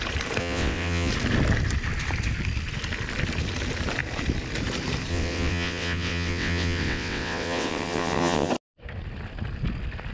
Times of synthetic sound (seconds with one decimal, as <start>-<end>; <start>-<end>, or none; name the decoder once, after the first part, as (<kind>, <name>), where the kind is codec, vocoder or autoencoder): 0.4-1.1 (vocoder, WaveNeXt); 5.1-8.5